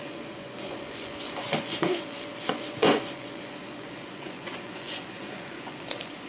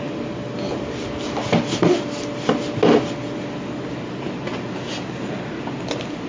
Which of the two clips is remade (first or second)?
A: first